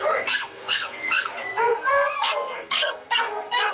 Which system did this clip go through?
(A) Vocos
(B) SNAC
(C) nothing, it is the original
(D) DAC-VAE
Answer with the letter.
B